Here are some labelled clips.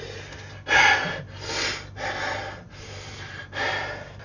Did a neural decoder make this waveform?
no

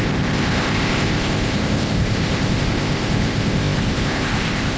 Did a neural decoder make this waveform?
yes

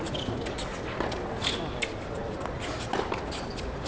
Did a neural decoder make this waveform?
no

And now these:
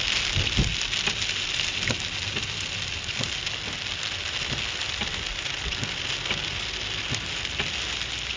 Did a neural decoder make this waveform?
no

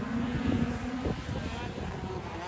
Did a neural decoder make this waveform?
no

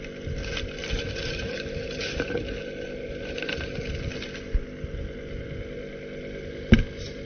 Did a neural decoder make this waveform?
no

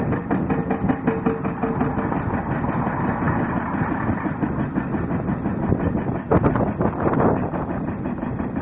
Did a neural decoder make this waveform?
no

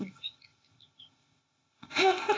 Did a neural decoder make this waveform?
yes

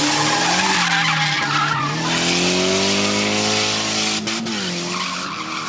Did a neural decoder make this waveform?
no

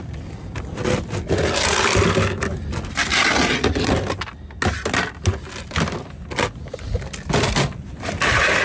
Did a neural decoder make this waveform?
no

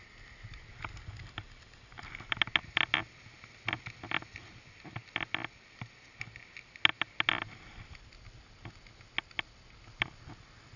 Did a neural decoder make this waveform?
no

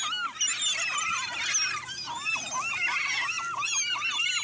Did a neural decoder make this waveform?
no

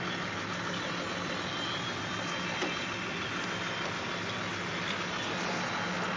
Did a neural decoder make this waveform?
no